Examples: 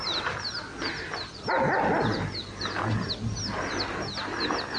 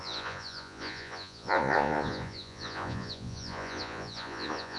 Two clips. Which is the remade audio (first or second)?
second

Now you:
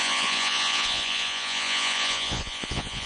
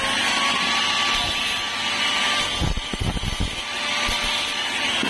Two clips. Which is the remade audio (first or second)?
first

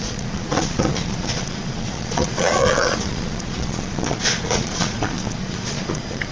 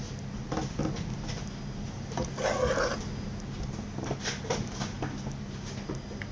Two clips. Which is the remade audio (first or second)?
first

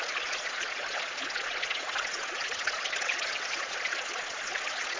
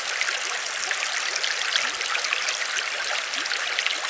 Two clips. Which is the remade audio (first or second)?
first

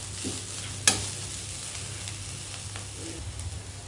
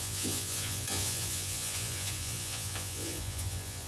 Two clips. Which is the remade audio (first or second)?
second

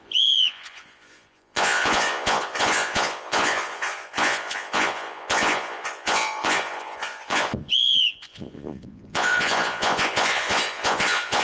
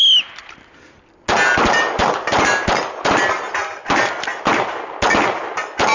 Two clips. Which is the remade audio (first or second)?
first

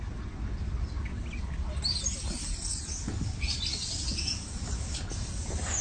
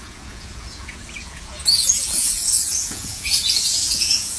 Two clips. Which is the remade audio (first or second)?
second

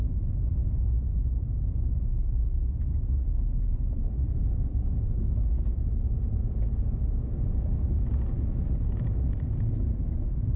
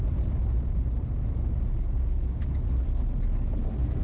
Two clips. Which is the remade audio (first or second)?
first